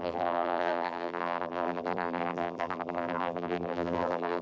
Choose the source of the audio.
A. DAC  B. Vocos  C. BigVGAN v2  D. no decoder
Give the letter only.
C